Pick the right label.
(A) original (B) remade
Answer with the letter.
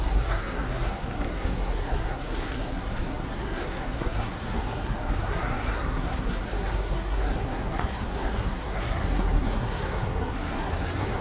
B